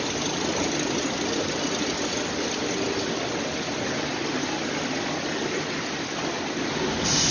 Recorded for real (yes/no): yes